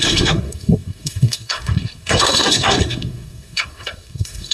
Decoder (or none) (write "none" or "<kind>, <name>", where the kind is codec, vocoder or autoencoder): codec, SNAC